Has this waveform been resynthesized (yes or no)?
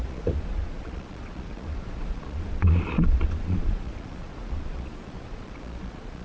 yes